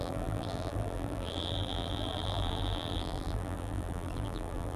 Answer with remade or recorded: remade